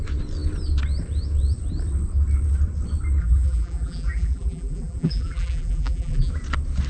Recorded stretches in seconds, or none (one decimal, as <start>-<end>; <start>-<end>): 0.0-3.2; 6.3-6.9